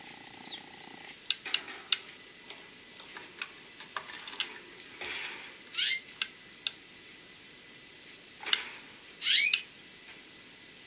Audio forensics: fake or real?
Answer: real